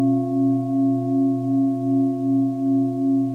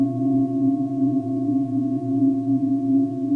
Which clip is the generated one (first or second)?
second